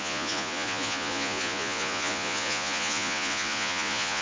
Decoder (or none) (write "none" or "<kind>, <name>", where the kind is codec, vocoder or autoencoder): vocoder, Vocos